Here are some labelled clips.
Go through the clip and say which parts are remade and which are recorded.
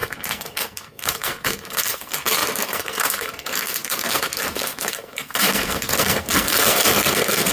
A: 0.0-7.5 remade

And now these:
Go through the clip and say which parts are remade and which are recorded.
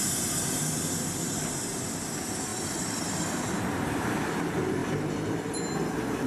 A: 0.0-2.5 recorded; 2.5-3.6 remade; 3.6-4.8 recorded; 4.8-5.4 remade; 5.4-6.3 recorded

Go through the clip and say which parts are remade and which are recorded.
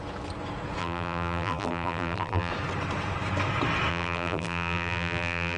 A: 0.0-0.8 recorded; 0.8-2.5 remade; 2.5-3.9 recorded; 3.9-5.6 remade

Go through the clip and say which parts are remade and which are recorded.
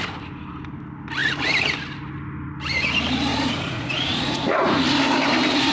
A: 0.0-3.3 recorded; 3.3-4.8 remade; 4.8-5.7 recorded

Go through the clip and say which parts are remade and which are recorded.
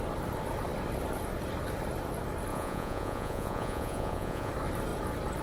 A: 0.0-2.5 recorded; 2.5-4.5 remade; 4.5-5.4 recorded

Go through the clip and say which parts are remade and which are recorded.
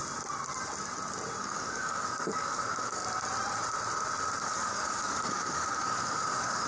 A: 0.0-1.4 recorded; 1.4-3.0 remade; 3.0-4.4 recorded; 4.4-6.7 remade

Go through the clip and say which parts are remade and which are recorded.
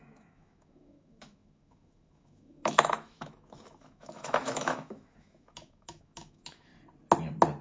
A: 0.0-6.7 remade; 6.7-7.6 recorded